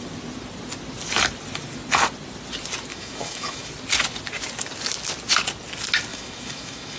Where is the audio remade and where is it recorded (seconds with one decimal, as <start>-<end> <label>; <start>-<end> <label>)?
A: 0.0-2.9 recorded; 2.9-3.7 remade; 3.7-6.1 recorded; 6.1-7.0 remade